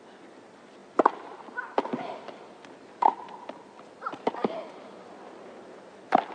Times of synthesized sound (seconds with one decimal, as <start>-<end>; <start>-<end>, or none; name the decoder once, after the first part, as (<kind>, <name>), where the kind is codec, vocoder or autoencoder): none